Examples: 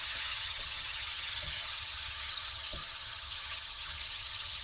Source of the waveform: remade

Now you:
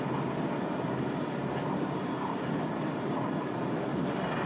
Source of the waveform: recorded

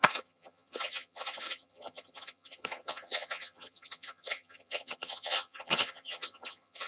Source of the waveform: remade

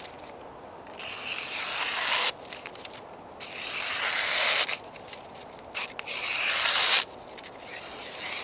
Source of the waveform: recorded